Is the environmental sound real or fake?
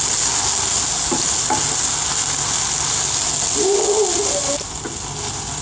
real